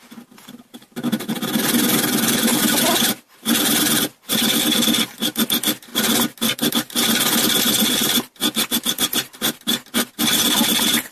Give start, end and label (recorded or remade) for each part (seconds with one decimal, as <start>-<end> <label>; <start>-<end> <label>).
0.0-5.9 remade; 5.9-6.7 recorded; 6.7-8.4 remade; 8.4-10.2 recorded; 10.2-11.1 remade